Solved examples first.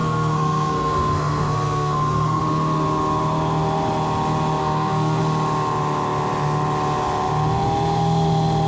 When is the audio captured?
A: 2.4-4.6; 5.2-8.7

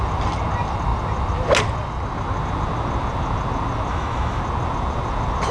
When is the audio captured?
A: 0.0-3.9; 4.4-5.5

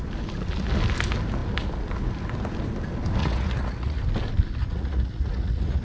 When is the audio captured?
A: 0.0-3.2; 4.0-4.6

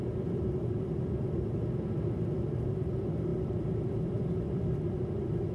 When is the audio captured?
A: none

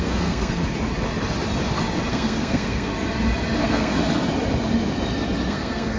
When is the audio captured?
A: 0.6-2.1; 2.9-3.6; 4.0-5.5